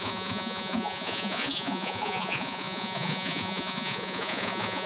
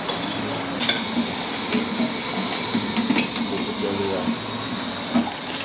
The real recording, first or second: second